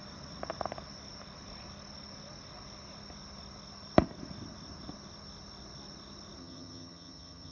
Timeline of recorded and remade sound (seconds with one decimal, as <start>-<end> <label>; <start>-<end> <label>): 0.0-6.4 recorded; 6.4-7.5 remade